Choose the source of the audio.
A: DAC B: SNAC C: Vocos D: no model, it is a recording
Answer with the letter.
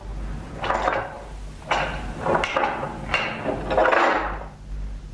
D